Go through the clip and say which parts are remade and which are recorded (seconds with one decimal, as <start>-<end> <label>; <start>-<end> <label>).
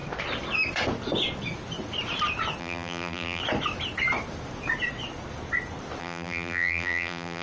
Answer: 0.0-2.6 recorded; 2.6-3.4 remade; 3.4-6.0 recorded; 6.0-7.4 remade